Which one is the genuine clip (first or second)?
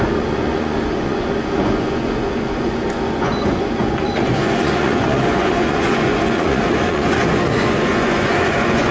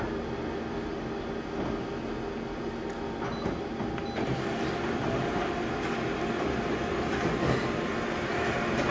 second